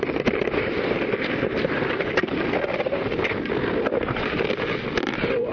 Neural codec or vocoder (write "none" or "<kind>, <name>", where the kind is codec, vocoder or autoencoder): none